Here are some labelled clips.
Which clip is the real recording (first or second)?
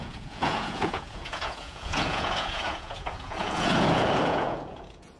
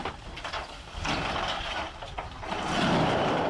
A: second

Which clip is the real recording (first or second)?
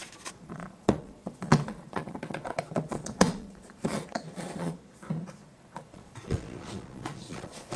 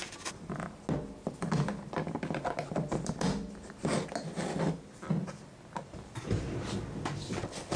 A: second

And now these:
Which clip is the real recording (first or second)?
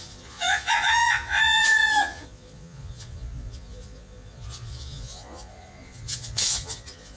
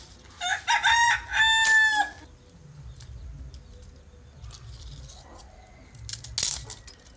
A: second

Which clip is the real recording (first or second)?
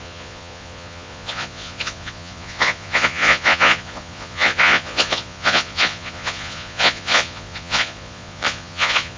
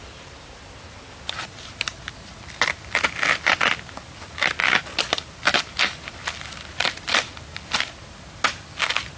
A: second